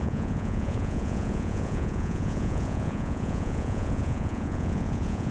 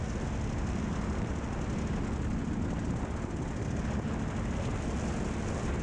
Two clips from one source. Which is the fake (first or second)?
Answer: first